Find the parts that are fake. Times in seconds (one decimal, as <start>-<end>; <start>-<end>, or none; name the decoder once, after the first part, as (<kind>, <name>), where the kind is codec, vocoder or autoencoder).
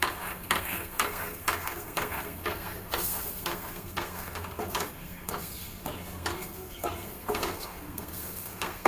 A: 0.0-8.9 (codec, SNAC)